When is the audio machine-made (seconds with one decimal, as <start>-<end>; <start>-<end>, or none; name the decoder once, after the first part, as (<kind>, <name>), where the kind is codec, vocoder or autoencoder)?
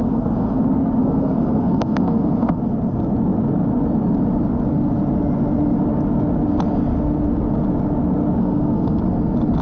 0.0-0.6 (codec, SNAC); 1.0-2.6; 8.4-9.0